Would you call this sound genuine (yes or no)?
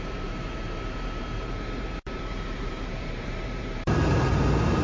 no